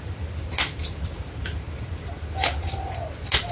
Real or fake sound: real